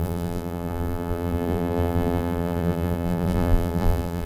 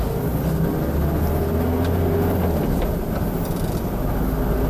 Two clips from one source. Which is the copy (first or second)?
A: first